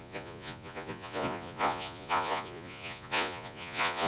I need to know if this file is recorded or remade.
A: remade